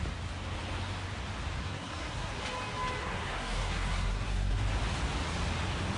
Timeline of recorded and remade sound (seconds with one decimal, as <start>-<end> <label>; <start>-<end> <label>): 0.0-1.6 recorded; 1.6-2.4 remade; 2.4-3.0 recorded; 3.0-4.6 remade; 4.6-6.0 recorded